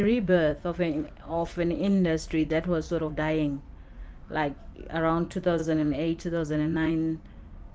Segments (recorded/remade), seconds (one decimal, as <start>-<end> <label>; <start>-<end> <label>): 0.0-3.1 remade; 3.1-5.6 recorded; 5.6-6.9 remade; 6.9-7.7 recorded